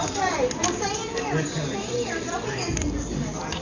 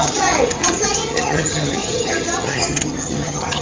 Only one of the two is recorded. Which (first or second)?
first